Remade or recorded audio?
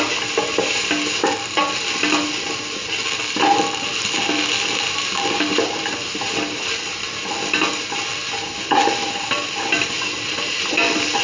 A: recorded